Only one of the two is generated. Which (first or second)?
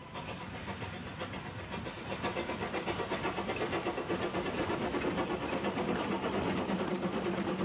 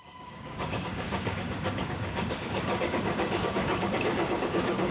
second